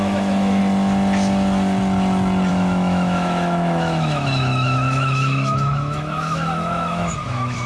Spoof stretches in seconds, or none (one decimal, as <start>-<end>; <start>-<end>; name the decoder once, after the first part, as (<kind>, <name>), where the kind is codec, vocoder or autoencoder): 0.0-0.6 (autoencoder, DAC-VAE); 2.5-7.7